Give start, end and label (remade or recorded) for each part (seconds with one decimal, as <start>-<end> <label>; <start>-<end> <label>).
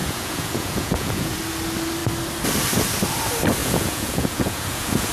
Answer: 0.0-1.4 remade; 1.4-3.6 recorded; 3.6-5.1 remade